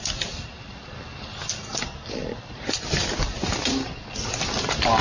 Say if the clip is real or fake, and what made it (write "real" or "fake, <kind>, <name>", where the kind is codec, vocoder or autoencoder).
real